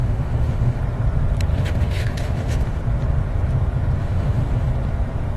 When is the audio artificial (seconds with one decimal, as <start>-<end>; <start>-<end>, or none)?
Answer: 0.0-0.8; 1.5-2.8; 4.0-4.7